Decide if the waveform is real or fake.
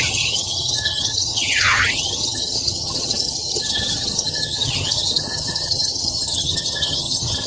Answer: fake